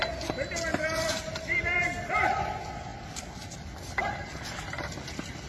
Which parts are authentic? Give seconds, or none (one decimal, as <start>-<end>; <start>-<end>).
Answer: 0.0-0.7; 2.1-2.9; 4.6-5.5